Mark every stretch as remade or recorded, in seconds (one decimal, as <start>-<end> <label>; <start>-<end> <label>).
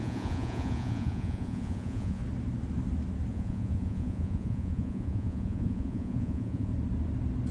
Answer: 0.0-2.2 remade; 2.2-3.3 recorded; 3.3-6.7 remade; 6.7-7.5 recorded